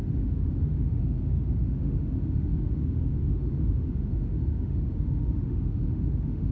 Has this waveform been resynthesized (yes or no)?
yes